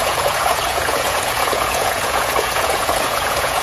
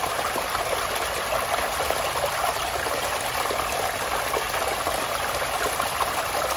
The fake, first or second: first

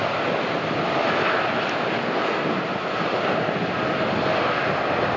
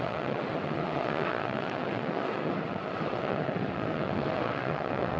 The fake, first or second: second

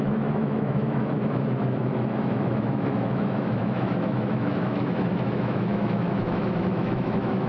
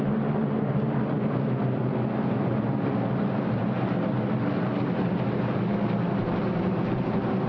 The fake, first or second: first